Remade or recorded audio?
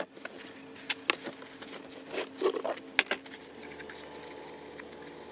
recorded